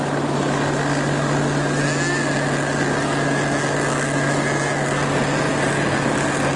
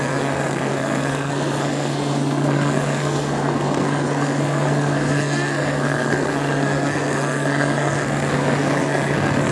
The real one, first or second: first